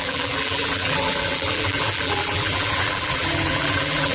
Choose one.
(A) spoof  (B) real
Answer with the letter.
A